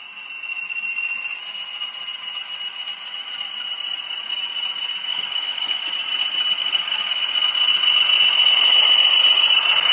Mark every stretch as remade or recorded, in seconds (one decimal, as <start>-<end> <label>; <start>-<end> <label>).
0.0-5.1 recorded; 5.1-5.8 remade; 5.8-6.6 recorded; 6.6-7.1 remade; 7.1-9.9 recorded